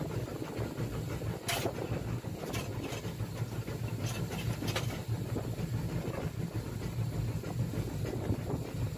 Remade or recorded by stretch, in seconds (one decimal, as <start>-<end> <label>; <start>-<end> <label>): 0.0-9.0 recorded